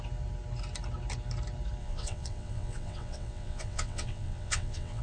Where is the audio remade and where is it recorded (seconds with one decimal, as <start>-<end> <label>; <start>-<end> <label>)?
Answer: 0.0-1.8 recorded; 1.8-5.0 remade